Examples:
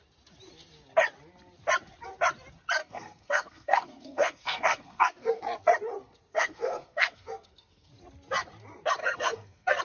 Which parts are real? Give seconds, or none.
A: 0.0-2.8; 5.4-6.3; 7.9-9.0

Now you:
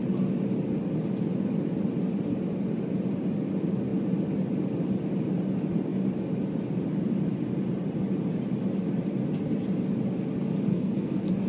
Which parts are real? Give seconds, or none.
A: 0.0-10.7

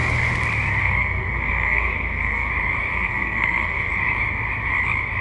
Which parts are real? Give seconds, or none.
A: 0.0-0.8; 2.5-2.9; 3.9-5.2